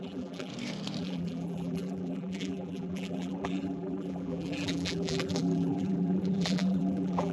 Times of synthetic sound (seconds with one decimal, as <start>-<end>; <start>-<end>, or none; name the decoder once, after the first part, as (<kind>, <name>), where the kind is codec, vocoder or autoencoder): 0.0-0.5 (vocoder, BigVGAN v2); 1.0-7.3